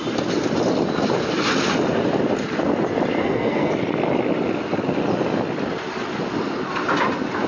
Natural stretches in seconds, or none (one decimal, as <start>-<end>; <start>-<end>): 0.0-3.2; 3.7-7.5